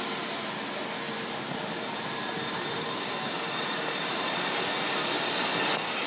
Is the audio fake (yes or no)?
no